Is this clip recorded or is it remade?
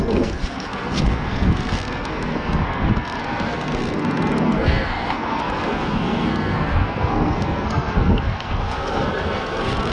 remade